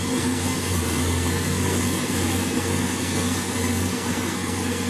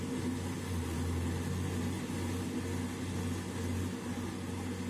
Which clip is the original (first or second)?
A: second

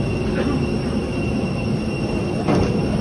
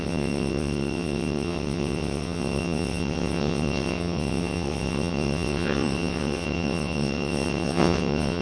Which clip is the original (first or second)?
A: first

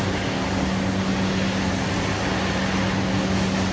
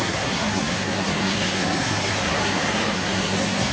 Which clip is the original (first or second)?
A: first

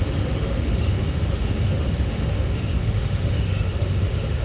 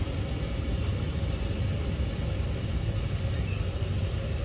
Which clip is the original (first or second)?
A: second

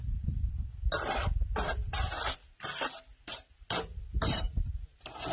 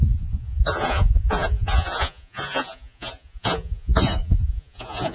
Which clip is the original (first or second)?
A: first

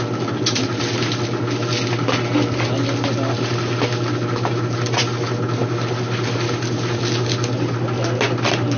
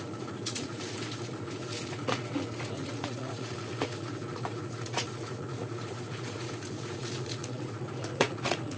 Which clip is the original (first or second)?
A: first